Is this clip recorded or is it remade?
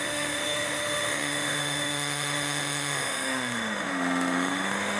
remade